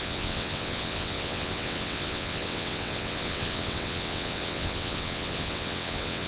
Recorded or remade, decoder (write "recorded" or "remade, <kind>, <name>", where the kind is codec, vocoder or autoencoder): remade, vocoder, WaveNeXt